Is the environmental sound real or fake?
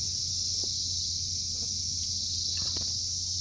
real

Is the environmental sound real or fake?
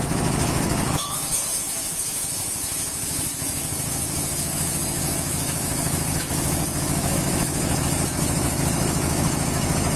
fake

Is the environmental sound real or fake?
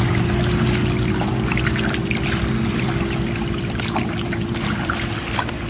real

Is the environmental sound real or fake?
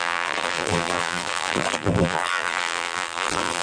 fake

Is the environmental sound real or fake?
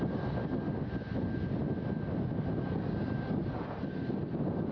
real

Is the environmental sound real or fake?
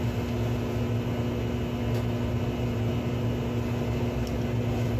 real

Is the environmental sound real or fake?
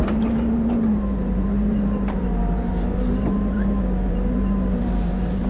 fake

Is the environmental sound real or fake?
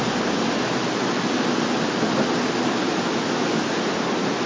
real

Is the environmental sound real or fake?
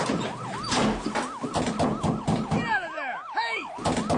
real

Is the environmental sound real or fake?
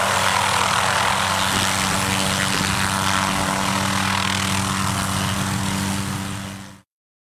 real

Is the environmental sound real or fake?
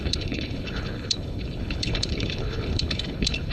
fake